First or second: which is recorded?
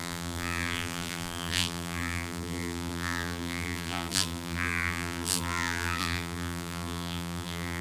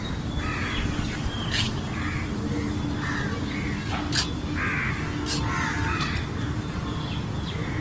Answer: second